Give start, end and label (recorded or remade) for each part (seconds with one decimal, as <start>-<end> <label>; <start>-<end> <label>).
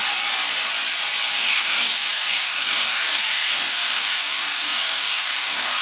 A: 0.0-1.3 recorded; 1.3-5.8 remade